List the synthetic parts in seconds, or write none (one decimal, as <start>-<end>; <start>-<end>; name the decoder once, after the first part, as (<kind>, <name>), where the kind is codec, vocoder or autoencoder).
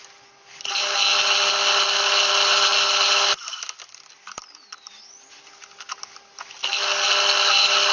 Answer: none